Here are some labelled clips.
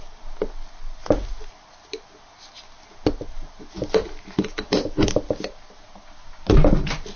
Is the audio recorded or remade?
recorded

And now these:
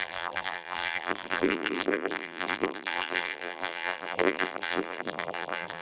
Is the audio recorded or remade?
remade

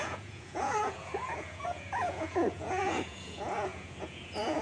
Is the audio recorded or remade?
remade